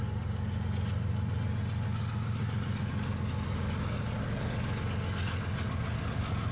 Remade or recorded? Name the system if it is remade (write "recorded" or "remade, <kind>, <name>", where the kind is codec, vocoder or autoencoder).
recorded